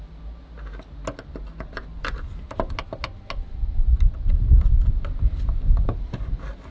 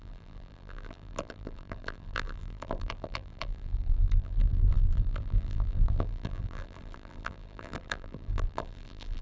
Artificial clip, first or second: second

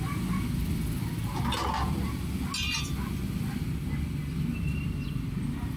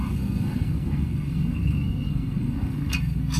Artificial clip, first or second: second